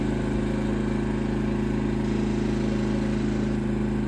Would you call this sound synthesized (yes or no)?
no